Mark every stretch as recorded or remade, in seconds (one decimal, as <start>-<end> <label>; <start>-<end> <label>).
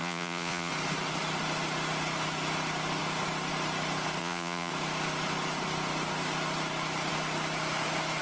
0.0-0.7 remade; 0.7-4.2 recorded; 4.2-4.7 remade; 4.7-8.2 recorded